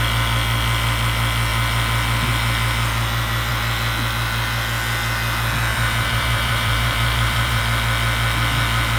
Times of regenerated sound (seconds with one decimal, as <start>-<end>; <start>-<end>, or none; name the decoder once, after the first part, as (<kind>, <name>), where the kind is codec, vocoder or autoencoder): 5.7-7.6 (vocoder, BigVGAN v2)